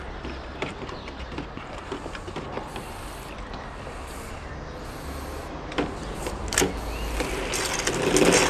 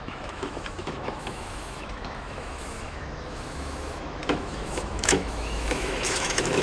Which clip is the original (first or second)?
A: first